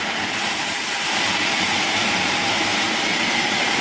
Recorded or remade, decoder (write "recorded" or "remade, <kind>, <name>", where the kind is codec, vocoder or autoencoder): remade, vocoder, BigVGAN v2